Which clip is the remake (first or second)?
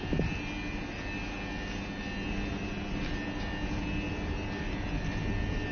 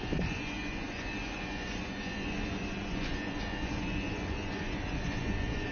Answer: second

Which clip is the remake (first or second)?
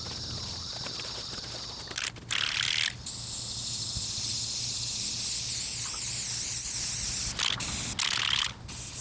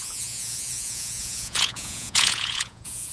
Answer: second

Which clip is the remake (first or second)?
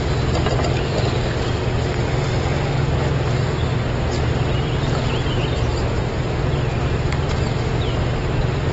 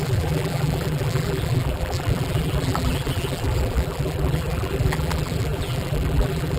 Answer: second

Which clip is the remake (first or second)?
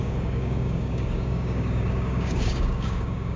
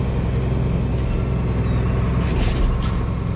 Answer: first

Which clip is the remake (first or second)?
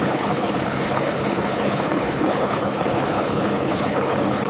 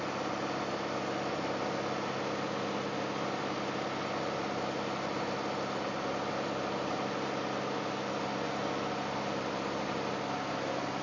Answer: first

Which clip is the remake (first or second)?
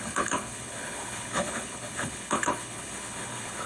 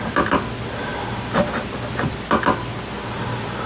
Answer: first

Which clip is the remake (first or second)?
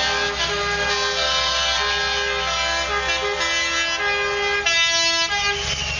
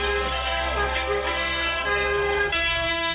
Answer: second